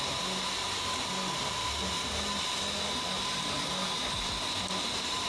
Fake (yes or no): no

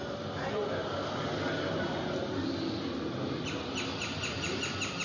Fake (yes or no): no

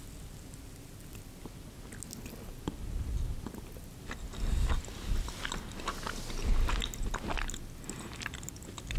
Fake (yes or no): no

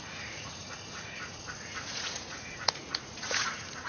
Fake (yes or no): yes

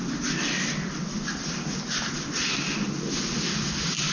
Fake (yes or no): no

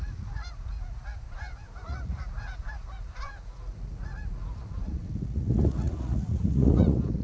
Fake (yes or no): yes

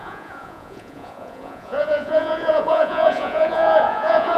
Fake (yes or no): yes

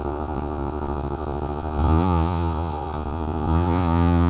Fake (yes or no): yes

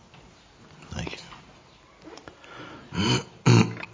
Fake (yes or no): no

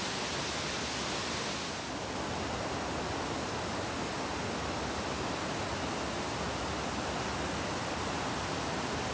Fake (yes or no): no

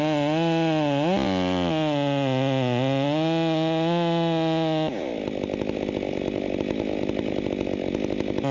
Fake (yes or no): no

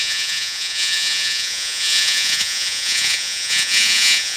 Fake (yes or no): yes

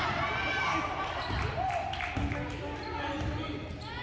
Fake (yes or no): no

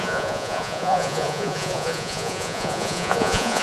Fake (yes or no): yes